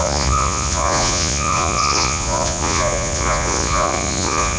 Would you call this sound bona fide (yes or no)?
no